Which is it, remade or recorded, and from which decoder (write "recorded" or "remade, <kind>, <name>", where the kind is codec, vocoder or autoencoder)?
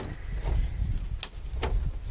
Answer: recorded